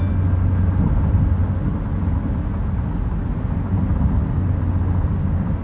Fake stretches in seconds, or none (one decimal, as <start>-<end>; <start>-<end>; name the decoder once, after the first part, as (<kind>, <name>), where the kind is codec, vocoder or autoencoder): none